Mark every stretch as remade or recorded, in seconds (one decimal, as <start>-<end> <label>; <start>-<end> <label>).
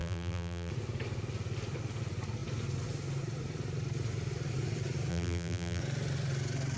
0.0-0.7 remade; 0.7-5.1 recorded; 5.1-5.8 remade; 5.8-6.8 recorded